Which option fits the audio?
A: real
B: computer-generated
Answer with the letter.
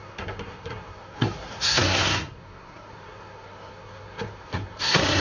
B